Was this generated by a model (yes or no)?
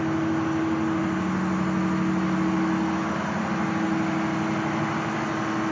no